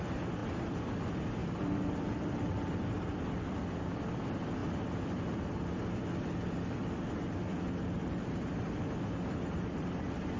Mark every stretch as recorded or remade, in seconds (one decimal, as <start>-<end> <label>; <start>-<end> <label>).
0.0-0.4 remade; 0.4-1.0 recorded; 1.0-10.4 remade